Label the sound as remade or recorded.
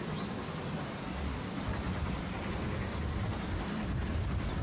recorded